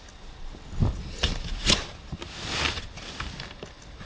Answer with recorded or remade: recorded